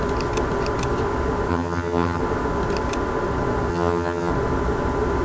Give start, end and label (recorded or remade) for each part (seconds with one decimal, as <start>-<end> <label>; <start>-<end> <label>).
0.0-1.5 recorded; 1.5-2.2 remade; 2.2-3.7 recorded; 3.7-4.3 remade; 4.3-5.2 recorded